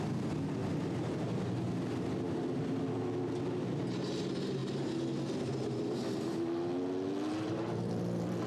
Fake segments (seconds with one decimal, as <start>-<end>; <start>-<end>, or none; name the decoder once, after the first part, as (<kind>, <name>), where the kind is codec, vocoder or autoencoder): none

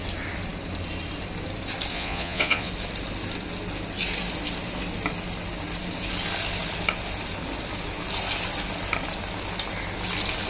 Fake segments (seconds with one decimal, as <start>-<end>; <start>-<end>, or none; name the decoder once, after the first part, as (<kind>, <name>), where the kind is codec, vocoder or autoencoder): 1.9-2.7 (vocoder, Vocos)

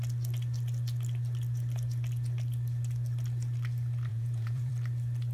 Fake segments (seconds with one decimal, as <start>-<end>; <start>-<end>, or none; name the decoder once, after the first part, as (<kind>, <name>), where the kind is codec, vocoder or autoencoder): 4.1-4.7 (vocoder, Vocos)

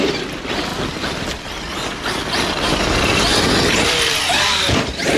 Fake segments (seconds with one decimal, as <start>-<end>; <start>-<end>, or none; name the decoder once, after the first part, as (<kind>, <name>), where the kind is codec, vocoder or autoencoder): none

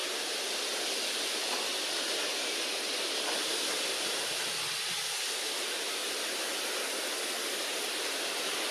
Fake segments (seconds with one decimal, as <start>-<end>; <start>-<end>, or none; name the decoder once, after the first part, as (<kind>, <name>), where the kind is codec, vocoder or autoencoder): none